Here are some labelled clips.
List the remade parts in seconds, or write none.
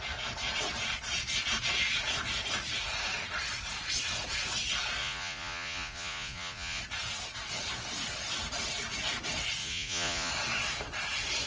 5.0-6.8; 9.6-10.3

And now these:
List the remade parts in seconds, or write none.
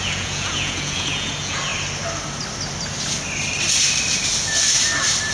0.0-1.7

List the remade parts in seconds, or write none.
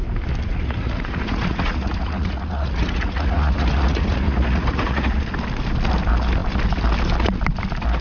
0.5-5.3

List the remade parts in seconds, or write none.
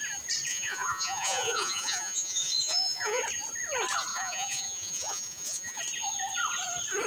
0.5-3.2; 4.1-5.8